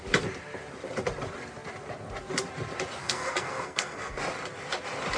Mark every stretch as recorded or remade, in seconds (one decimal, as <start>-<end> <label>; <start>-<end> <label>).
0.0-3.0 recorded; 3.0-4.2 remade; 4.2-5.2 recorded

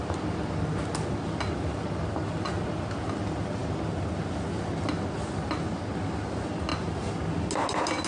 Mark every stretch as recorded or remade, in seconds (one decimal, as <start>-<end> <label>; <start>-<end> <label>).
0.0-8.1 recorded

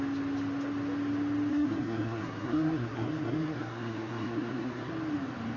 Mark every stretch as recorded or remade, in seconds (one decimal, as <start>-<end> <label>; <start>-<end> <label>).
0.0-1.5 recorded; 1.5-4.9 remade; 4.9-5.6 recorded

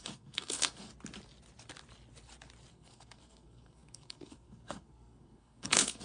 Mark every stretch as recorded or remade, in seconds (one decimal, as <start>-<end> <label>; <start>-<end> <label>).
0.0-0.9 remade; 0.9-2.7 recorded; 2.7-6.0 remade

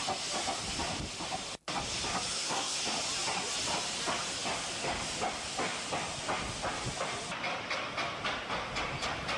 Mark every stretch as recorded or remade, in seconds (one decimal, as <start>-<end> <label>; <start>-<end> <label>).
0.0-2.3 recorded; 2.3-2.8 remade; 2.8-9.4 recorded

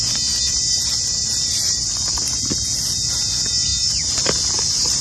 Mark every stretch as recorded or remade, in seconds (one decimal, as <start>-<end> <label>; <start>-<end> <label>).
0.0-5.0 recorded